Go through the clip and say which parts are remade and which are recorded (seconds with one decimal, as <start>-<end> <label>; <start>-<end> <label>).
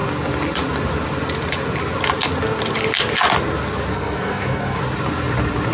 0.0-3.9 recorded; 3.9-4.8 remade; 4.8-5.7 recorded